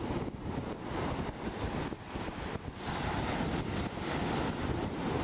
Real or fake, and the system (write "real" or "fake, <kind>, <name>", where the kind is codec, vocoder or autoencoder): real